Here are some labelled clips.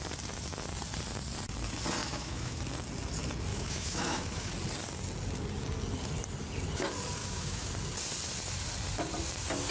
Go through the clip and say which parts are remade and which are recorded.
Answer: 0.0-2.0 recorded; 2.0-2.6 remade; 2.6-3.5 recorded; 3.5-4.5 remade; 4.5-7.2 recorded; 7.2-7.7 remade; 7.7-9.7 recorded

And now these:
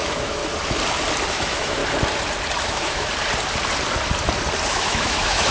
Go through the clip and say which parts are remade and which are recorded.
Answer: 0.0-0.4 remade; 0.4-1.3 recorded; 1.3-1.8 remade; 1.8-2.6 recorded; 2.6-3.1 remade; 3.1-4.7 recorded; 4.7-5.5 remade

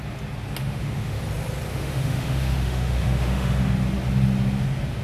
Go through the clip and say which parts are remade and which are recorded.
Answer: 0.0-0.6 recorded; 0.6-1.2 remade; 1.2-1.7 recorded; 1.7-3.6 remade; 3.6-5.0 recorded

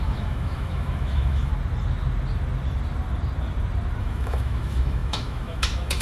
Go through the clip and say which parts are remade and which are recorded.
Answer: 0.0-1.5 remade; 1.5-4.0 recorded; 4.0-6.0 remade

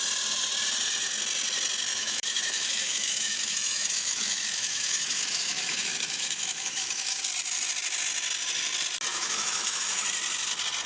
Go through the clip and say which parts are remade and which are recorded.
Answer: 0.0-1.9 recorded; 1.9-7.2 remade; 7.2-9.1 recorded; 9.1-10.1 remade; 10.1-10.9 recorded

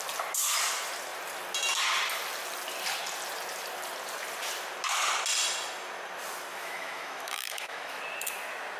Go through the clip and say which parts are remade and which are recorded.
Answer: 0.0-6.5 recorded; 6.5-8.0 remade; 8.0-8.8 recorded

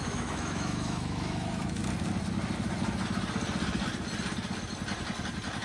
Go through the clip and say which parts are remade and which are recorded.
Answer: 0.0-1.8 remade; 1.8-5.6 recorded

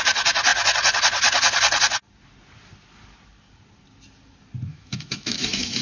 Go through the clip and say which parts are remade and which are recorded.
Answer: 0.0-4.7 recorded; 4.7-5.8 remade